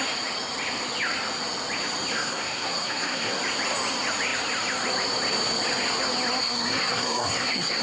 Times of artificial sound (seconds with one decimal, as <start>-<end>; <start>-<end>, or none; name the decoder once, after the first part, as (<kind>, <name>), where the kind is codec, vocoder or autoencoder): 2.1-3.4 (codec, SNAC); 6.4-7.8